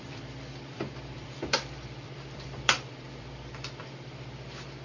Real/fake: fake